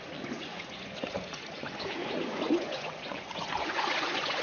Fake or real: fake